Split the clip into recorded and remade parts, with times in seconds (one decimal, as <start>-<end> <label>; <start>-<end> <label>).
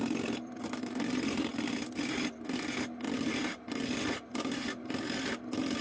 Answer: 0.0-5.8 recorded